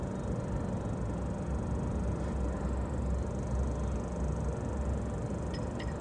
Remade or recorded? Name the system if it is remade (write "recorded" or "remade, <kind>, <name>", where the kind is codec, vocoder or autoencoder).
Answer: recorded